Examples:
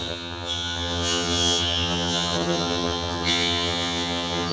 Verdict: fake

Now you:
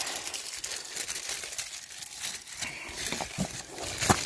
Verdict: real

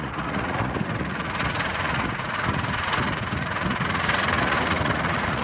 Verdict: fake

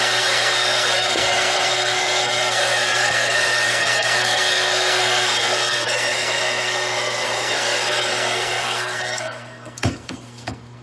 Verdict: fake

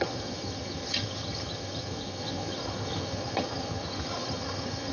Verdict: fake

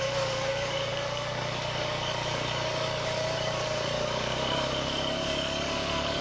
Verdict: fake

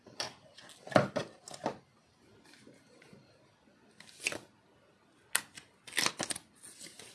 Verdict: real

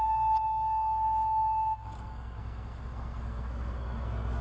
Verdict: fake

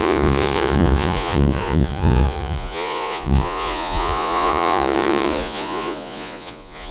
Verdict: fake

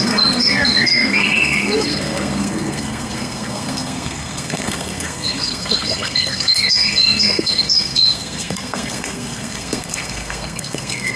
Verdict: fake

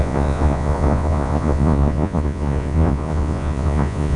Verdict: fake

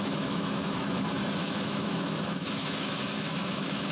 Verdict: fake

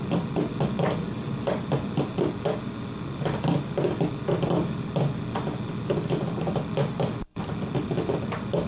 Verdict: real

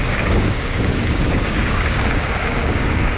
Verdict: fake